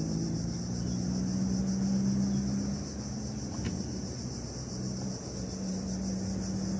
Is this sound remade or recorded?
recorded